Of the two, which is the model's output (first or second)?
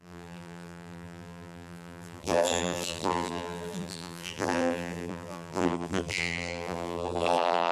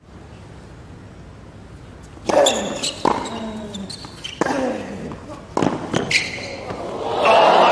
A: first